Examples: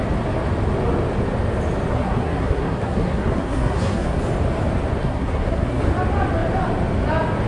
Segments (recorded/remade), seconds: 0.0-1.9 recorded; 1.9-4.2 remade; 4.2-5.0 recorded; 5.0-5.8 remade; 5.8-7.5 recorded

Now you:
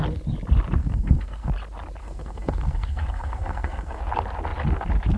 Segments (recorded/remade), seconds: 0.0-0.8 recorded; 0.8-1.5 remade; 1.5-2.0 recorded; 2.0-4.0 remade; 4.0-5.2 recorded

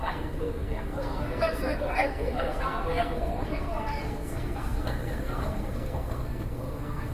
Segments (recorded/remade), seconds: 0.0-7.1 remade

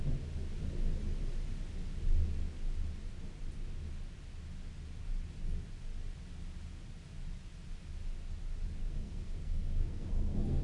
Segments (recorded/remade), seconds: 0.0-8.8 recorded; 8.8-10.6 remade

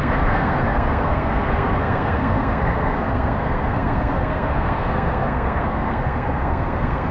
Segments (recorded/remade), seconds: 0.0-7.1 remade

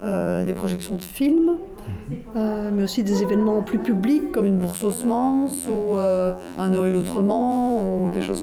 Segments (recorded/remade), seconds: 0.0-1.1 remade; 1.1-4.4 recorded; 4.4-8.4 remade

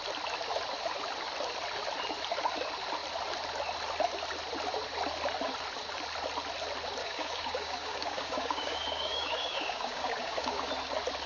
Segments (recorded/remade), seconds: 0.0-7.0 recorded; 7.0-10.7 remade; 10.7-11.3 recorded

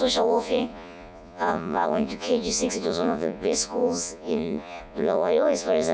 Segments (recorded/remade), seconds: 0.0-5.9 remade